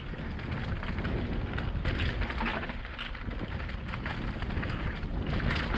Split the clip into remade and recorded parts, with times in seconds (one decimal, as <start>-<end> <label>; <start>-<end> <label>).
0.0-2.5 recorded; 2.5-3.7 remade; 3.7-5.8 recorded